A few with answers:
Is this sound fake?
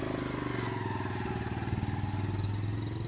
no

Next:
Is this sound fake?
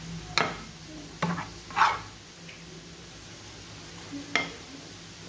no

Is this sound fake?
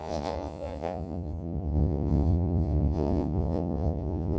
yes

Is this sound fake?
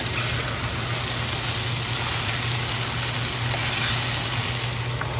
no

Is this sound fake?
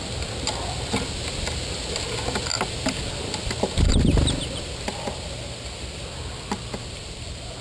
no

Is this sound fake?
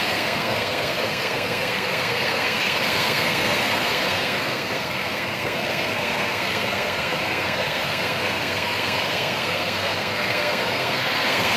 yes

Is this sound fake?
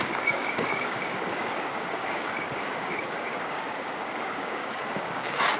yes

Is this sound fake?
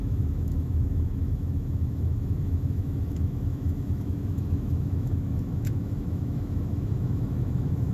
yes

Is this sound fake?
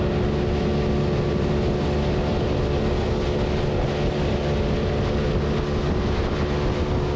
no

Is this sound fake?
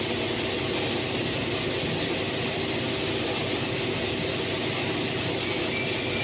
no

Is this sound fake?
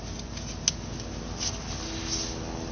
no